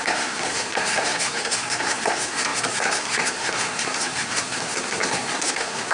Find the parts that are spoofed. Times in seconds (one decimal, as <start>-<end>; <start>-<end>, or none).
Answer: 0.0-5.9